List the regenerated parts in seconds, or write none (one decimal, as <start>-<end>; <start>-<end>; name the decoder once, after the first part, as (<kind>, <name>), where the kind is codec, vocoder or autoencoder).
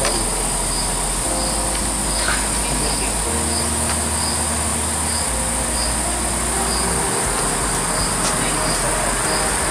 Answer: none